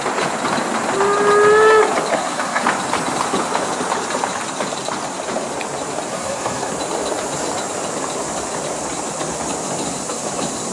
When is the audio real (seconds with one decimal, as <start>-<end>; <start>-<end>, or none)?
0.0-2.1; 2.6-6.1; 6.7-10.7